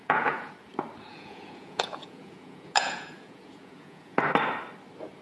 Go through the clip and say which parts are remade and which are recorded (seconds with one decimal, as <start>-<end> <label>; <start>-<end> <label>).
0.0-0.5 remade; 0.5-1.1 recorded; 1.1-4.2 remade; 4.2-5.2 recorded